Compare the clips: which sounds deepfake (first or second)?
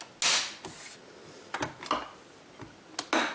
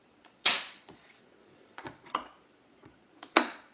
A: second